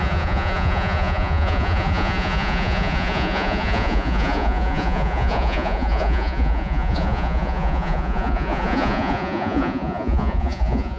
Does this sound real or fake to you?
fake